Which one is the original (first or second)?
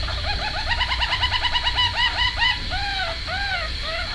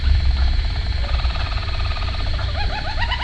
first